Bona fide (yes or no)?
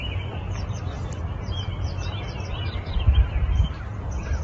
no